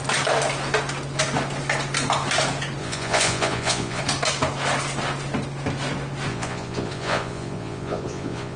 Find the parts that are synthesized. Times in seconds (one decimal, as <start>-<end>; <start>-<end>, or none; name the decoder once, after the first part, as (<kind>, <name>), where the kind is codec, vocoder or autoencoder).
2.8-4.0 (vocoder, Vocos); 6.3-8.6